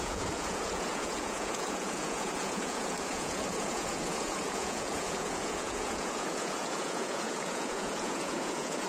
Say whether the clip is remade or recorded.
remade